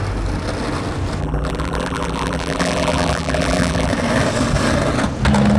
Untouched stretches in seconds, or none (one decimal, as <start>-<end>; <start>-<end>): 0.0-1.2; 3.9-5.6